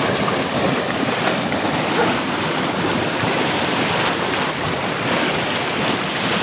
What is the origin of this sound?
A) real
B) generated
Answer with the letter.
A